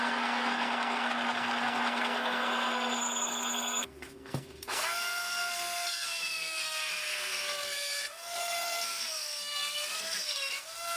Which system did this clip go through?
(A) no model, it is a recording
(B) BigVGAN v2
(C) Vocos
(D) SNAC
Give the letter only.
D